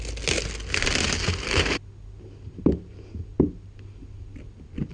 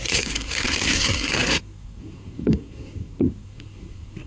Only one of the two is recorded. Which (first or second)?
first